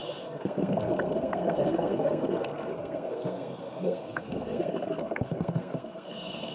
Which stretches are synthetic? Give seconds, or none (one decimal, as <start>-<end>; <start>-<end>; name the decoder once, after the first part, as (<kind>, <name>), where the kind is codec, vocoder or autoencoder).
0.0-6.5 (codec, SNAC)